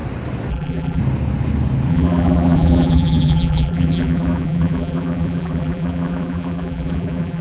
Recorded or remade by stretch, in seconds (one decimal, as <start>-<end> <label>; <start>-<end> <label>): 0.0-0.5 recorded; 0.5-1.0 remade; 1.0-1.9 recorded; 1.9-7.4 remade